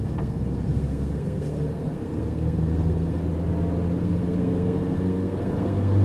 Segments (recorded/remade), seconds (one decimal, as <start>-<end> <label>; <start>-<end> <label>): 0.0-3.2 remade; 3.2-4.0 recorded; 4.0-6.0 remade